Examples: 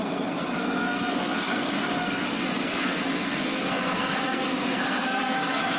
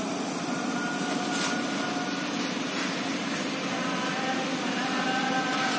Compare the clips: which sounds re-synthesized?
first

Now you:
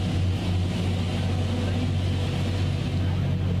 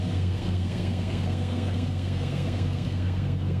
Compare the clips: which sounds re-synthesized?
second